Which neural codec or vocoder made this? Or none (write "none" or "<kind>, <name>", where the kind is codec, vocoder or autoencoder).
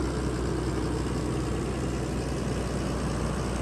none